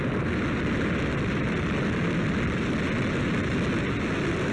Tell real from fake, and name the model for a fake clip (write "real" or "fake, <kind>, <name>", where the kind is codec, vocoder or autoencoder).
real